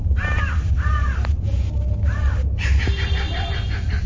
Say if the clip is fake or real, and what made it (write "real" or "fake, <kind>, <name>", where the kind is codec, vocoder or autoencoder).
real